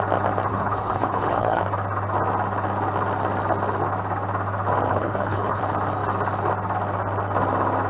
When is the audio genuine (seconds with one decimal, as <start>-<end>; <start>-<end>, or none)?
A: 0.0-0.5; 1.6-4.9; 5.6-7.9